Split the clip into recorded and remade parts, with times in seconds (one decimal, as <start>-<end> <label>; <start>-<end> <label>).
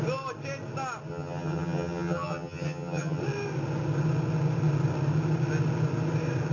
0.0-1.1 recorded; 1.1-3.2 remade; 3.2-6.5 recorded